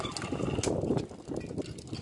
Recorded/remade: recorded